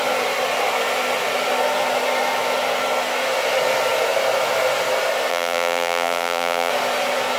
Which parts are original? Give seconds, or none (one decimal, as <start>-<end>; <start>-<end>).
0.0-5.3; 6.7-7.4